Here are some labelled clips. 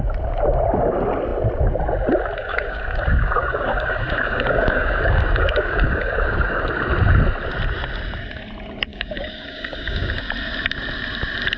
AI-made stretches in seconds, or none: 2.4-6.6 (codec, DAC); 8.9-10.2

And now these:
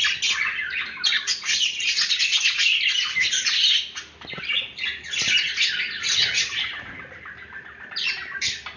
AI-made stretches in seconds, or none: none

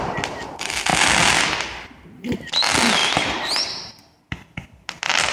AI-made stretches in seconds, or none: none

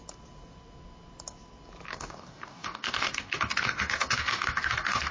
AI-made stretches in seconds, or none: 1.9-5.1 (codec, DAC)

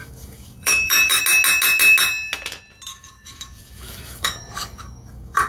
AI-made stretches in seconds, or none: 0.0-1.2 (codec, DAC); 2.9-5.5